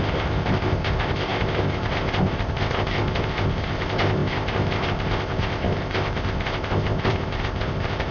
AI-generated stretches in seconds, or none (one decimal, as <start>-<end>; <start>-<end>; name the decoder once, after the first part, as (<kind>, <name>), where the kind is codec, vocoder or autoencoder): 0.0-8.1 (codec, ZipCodec)